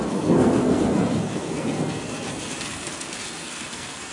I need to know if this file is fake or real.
fake